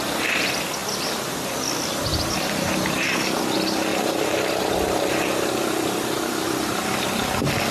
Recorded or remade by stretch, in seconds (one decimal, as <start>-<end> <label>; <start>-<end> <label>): 0.0-2.1 recorded; 2.1-3.4 remade; 3.4-3.9 recorded; 3.9-6.8 remade; 6.8-7.7 recorded